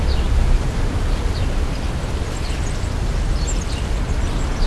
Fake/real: real